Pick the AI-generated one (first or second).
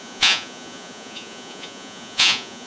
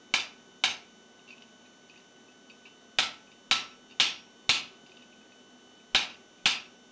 first